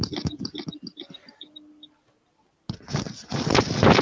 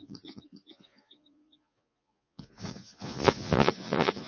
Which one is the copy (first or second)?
second